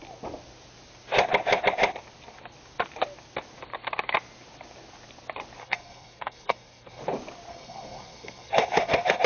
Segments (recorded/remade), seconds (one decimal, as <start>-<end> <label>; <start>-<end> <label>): 0.0-5.6 recorded; 5.6-7.0 remade; 7.0-7.5 recorded; 7.5-9.3 remade